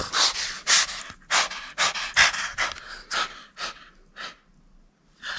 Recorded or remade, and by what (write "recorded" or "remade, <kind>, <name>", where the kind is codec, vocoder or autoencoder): recorded